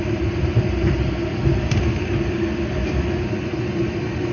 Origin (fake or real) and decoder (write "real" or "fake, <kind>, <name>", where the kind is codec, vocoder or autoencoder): real